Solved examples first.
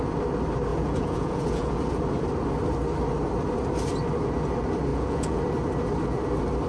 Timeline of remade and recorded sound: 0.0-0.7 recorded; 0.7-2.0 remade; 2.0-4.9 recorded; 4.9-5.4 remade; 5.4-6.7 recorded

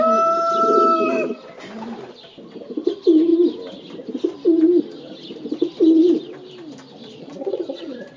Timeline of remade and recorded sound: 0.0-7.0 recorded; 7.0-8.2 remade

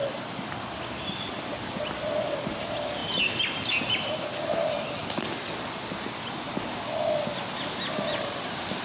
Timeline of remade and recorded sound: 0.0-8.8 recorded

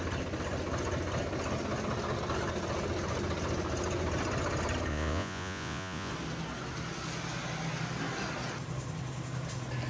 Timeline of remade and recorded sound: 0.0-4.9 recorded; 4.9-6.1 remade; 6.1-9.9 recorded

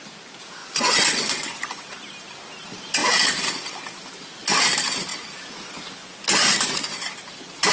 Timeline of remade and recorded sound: 0.0-0.6 recorded; 0.6-1.9 remade; 1.9-7.7 recorded